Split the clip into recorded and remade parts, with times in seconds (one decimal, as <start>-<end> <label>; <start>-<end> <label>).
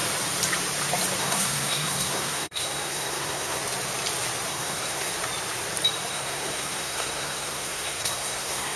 0.0-1.2 recorded; 1.2-3.6 remade; 3.6-4.5 recorded; 4.5-5.1 remade; 5.1-6.1 recorded; 6.1-8.8 remade